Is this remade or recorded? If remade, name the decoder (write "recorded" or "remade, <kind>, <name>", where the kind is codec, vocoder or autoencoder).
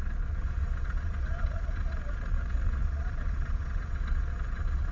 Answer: remade, vocoder, Vocos